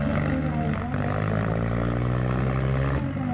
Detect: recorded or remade recorded